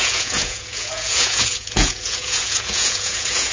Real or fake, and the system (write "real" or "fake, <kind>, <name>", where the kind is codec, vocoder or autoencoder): fake, vocoder, Vocos